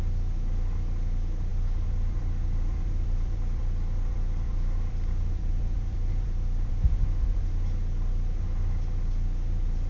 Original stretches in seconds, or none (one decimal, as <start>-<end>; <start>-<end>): 0.0-1.5; 6.7-9.9